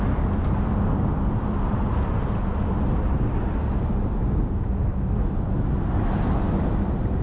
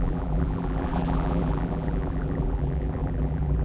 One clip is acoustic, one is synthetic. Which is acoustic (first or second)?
first